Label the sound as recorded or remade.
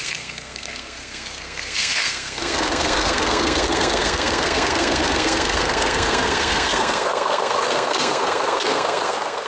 remade